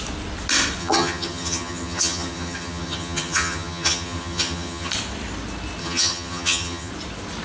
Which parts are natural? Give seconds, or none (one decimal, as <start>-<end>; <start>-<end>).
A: 0.0-0.8; 4.9-5.8; 6.9-7.4